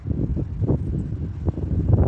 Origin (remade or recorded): recorded